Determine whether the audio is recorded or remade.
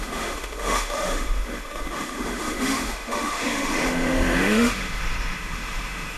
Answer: remade